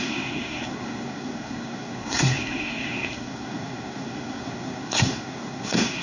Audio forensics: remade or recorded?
remade